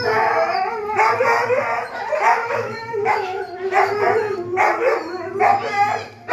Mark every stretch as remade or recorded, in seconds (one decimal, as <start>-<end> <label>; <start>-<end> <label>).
0.0-2.4 recorded; 2.4-3.4 remade; 3.4-6.3 recorded